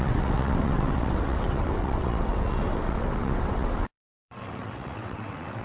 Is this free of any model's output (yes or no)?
no